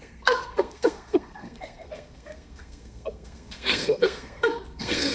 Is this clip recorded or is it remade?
remade